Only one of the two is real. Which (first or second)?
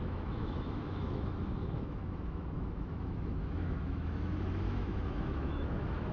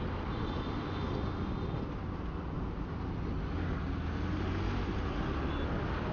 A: second